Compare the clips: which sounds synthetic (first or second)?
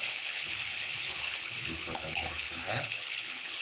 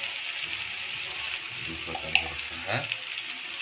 first